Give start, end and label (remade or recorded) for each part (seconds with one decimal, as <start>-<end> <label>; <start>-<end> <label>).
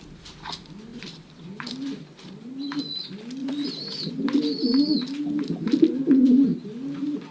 0.0-0.9 recorded; 0.9-2.8 remade; 2.8-3.4 recorded; 3.4-4.1 remade; 4.1-7.3 recorded